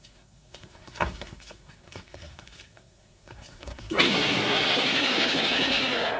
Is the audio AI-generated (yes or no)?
yes